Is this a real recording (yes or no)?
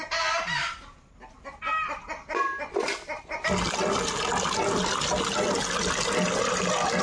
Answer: yes